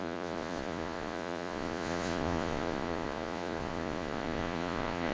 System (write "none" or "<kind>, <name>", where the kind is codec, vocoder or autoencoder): vocoder, Vocos